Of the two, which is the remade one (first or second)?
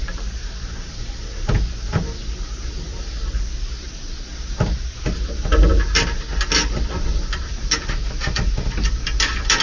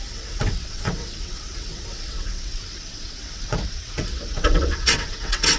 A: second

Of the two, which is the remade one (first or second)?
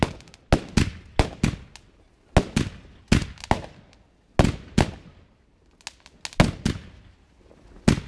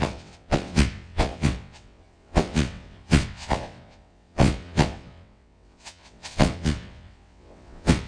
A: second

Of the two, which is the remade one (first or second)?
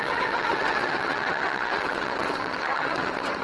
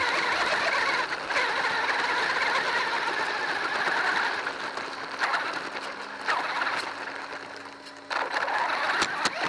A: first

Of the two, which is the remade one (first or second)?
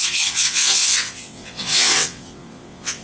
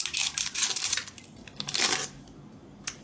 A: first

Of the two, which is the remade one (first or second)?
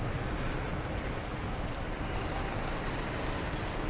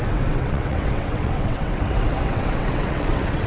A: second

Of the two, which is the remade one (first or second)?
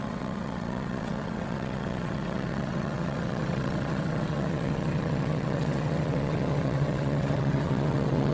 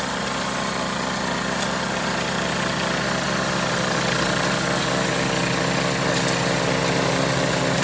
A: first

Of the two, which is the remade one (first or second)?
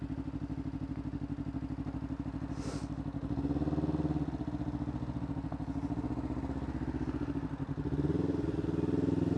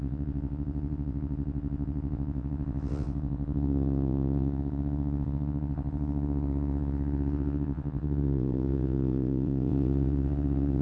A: second